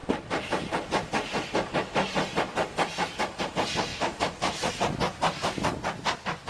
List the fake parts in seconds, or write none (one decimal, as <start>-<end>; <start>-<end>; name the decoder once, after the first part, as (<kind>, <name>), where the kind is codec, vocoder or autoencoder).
3.9-4.7 (vocoder, BigVGAN v2)